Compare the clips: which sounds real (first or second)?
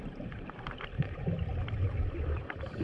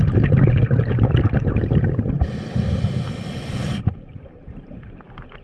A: second